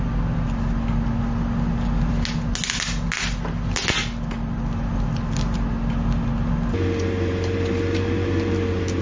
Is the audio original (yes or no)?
yes